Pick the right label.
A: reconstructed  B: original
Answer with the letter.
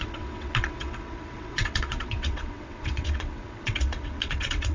A